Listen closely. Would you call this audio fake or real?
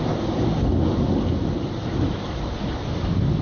real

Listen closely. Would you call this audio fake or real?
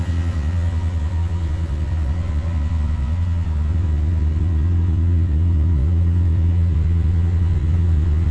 fake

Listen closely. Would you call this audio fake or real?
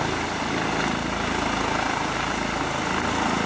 real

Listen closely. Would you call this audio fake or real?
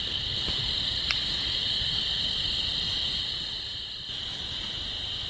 real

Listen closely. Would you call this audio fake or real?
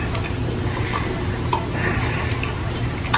real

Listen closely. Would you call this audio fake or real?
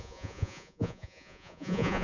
fake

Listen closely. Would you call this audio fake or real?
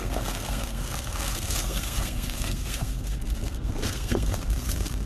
fake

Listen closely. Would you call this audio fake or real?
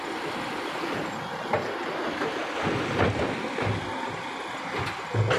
real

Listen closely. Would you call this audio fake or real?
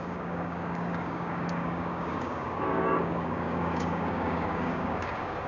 fake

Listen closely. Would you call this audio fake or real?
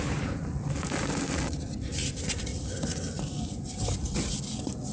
real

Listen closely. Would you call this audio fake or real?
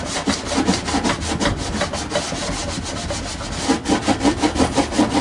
real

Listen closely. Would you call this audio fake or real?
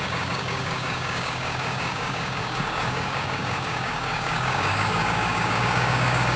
fake